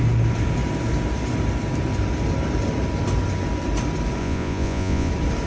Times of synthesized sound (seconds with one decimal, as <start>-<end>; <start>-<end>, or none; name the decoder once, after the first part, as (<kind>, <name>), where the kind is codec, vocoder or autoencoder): 4.2-5.1 (vocoder, Vocos)